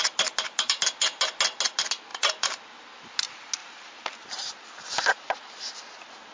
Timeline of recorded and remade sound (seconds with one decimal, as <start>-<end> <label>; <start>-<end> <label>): 0.0-2.1 recorded; 2.1-3.1 remade; 3.1-3.6 recorded; 3.6-4.7 remade; 4.7-6.3 recorded